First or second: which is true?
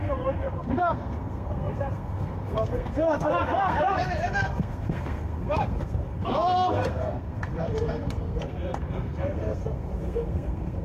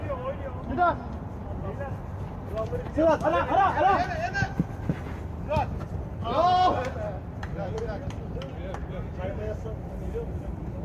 second